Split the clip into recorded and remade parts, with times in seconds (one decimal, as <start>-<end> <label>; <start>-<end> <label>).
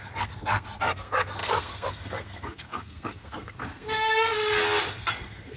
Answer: 0.0-4.4 remade; 4.4-4.9 recorded; 4.9-5.6 remade